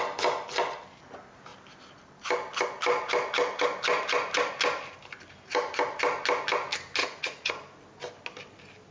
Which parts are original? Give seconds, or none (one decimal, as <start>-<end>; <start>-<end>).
0.0-7.0; 7.5-8.9